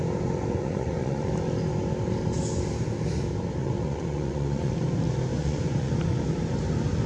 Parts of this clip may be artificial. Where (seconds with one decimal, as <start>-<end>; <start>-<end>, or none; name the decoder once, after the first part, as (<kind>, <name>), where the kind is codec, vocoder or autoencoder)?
0.5-1.3 (vocoder, Vocos); 3.6-4.7; 5.3-5.9